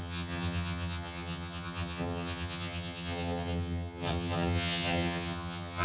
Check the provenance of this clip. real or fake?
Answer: fake